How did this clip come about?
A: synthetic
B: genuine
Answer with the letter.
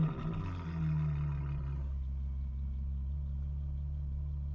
B